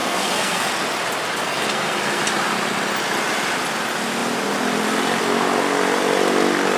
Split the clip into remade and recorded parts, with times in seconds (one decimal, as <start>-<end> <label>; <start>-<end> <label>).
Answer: 0.0-0.7 remade; 0.7-1.4 recorded; 1.4-2.2 remade; 2.2-6.8 recorded